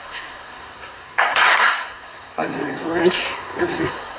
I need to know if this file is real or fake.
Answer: fake